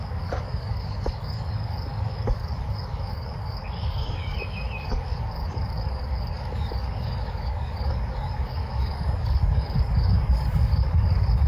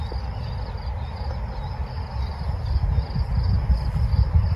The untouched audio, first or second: second